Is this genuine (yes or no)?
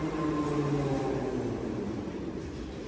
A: yes